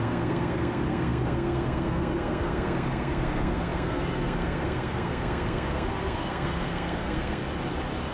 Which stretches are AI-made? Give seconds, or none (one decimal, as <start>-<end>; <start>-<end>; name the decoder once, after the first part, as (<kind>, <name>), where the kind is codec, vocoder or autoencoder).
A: 0.0-7.4 (codec, SNAC)